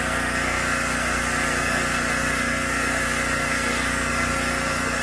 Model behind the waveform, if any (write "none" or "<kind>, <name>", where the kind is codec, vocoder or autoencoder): codec, SNAC